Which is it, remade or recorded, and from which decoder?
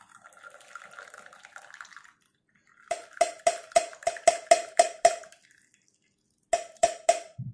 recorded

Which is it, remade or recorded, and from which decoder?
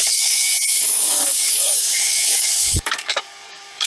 remade, codec, DAC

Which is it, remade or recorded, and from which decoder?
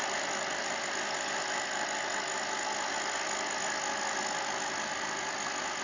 recorded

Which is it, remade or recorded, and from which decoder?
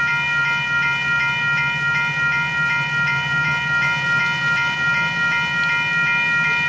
recorded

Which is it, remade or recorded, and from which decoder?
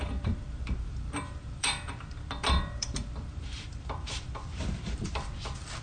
remade, vocoder, BigVGAN v2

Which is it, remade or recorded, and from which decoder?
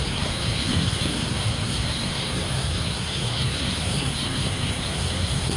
remade, codec, SNAC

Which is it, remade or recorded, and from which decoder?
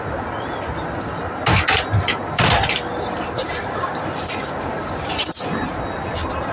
recorded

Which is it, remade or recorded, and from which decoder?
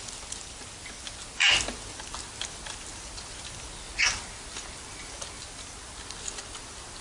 recorded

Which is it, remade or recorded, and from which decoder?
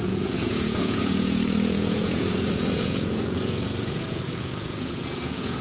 remade, vocoder, Vocos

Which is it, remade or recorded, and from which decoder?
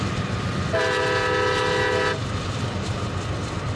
recorded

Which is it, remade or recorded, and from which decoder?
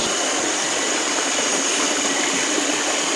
recorded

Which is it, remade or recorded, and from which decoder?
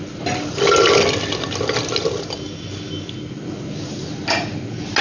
recorded